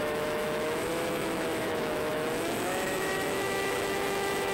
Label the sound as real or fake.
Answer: fake